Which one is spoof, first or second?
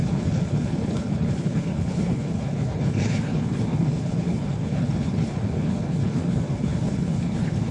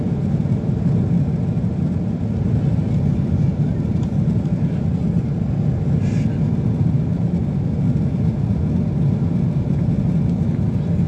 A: first